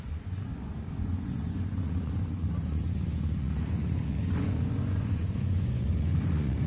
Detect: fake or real fake